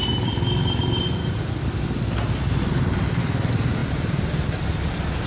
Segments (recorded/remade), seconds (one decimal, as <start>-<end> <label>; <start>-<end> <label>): 0.0-5.3 recorded